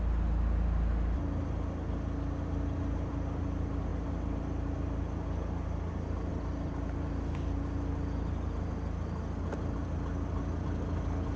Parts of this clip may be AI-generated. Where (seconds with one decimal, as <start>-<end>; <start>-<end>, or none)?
none